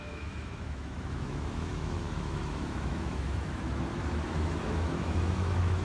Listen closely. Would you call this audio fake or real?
fake